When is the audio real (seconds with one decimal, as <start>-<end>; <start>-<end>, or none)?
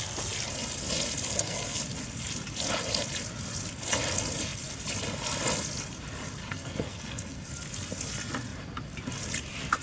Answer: 0.0-1.3; 1.8-6.4; 7.5-9.8